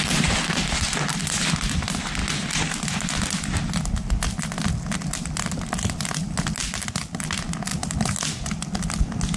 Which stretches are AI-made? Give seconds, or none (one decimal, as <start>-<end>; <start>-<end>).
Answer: none